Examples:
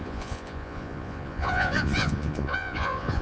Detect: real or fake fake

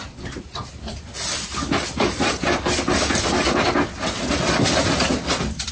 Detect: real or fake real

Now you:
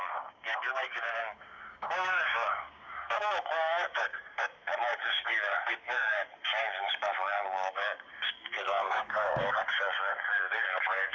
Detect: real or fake fake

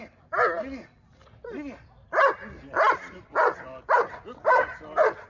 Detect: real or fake real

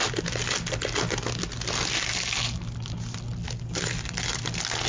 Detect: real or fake real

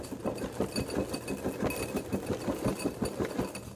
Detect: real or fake real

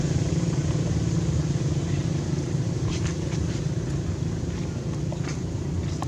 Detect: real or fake real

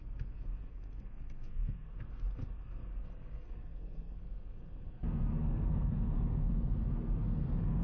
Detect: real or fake fake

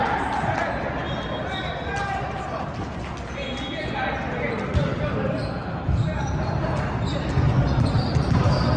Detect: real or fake real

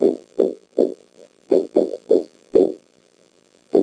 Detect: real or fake fake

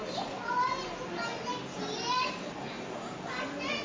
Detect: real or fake real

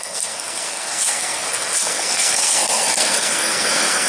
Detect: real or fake fake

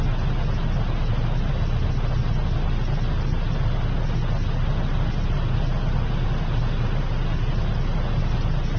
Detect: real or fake real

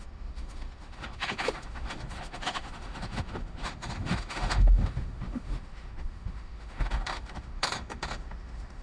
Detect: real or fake fake